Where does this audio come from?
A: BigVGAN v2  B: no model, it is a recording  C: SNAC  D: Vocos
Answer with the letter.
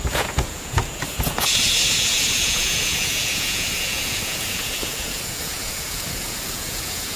D